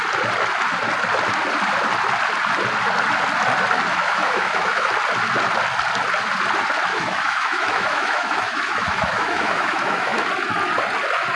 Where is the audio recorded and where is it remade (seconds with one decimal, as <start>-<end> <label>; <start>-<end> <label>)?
0.0-3.9 recorded; 3.9-4.9 remade; 4.9-6.9 recorded; 6.9-10.3 remade; 10.3-11.4 recorded